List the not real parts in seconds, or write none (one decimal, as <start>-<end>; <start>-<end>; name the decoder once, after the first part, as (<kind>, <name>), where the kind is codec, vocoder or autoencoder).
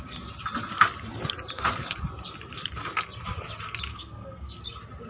3.9-4.6 (codec, SNAC)